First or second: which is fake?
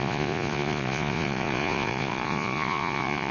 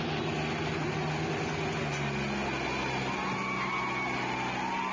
first